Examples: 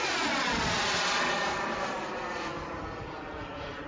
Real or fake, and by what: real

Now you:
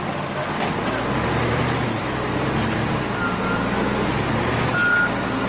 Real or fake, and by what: real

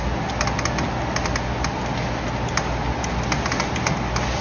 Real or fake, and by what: real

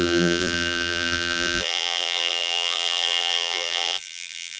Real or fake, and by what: fake, vocoder, BigVGAN v2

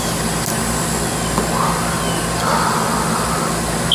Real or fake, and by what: real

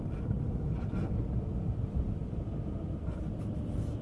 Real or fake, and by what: fake, vocoder, BigVGAN v2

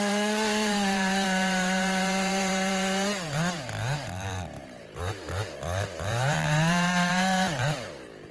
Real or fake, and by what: fake, vocoder, BigVGAN v2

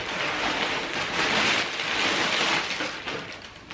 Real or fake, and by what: real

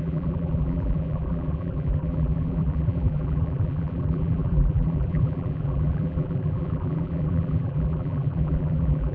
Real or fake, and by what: fake, vocoder, BigVGAN v2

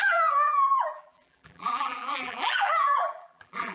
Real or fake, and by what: fake, vocoder, BigVGAN v2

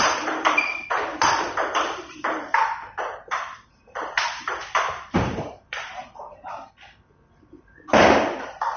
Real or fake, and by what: fake, vocoder, BigVGAN v2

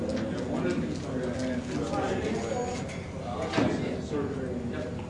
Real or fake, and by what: real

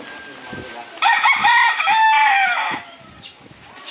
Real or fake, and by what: real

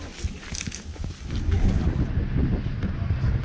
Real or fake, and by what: real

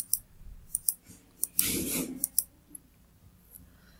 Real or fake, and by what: fake, vocoder, BigVGAN v2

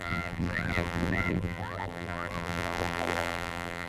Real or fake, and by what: fake, vocoder, BigVGAN v2